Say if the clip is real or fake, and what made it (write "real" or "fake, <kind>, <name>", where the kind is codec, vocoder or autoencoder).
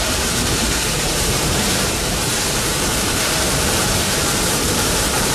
fake, vocoder, BigVGAN v2